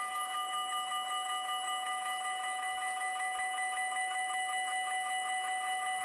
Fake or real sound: fake